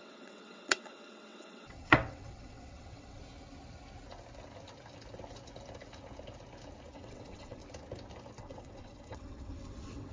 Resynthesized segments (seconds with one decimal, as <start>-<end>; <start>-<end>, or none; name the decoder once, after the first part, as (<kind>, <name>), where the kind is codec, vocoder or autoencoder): 0.0-3.2 (vocoder, WaveNeXt); 6.9-7.6; 8.4-10.1